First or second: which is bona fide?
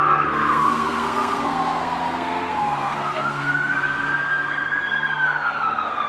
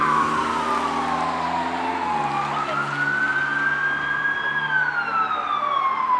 second